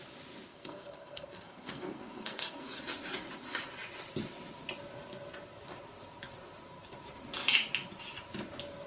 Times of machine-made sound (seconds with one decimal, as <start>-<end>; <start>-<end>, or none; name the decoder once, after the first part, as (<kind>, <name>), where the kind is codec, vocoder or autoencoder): 0.5-2.8 (codec, SNAC)